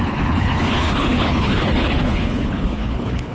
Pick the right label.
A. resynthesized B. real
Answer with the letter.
A